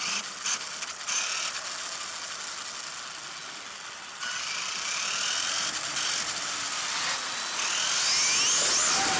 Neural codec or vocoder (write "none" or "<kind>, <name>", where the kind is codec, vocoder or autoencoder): none